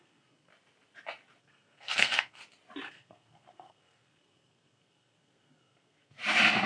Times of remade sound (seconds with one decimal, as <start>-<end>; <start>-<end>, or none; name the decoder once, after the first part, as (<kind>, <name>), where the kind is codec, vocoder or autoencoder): 0.0-0.5 (codec, SNAC); 1.4-2.4; 2.9-6.2